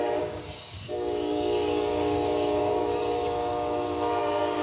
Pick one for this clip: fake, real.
fake